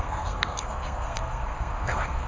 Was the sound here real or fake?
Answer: fake